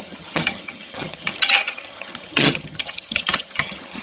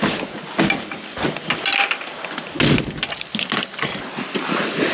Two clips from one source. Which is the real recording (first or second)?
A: second